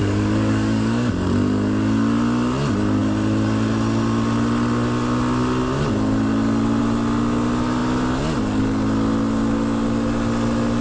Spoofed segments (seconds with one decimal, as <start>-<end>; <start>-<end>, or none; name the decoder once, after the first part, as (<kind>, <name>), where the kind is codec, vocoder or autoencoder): 0.0-1.1 (codec, DAC)